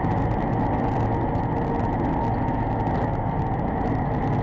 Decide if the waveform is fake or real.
real